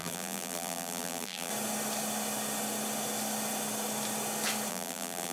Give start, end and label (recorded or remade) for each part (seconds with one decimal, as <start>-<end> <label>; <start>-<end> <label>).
0.0-1.5 remade; 1.5-4.7 recorded; 4.7-5.3 remade